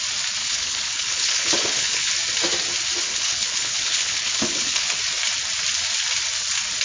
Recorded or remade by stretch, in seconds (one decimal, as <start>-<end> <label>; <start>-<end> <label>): 0.0-0.4 recorded; 0.4-2.1 remade; 2.1-3.1 recorded; 3.1-5.0 remade; 5.0-6.8 recorded